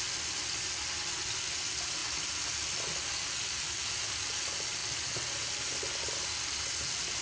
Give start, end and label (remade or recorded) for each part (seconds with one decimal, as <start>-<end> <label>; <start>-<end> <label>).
0.0-7.2 recorded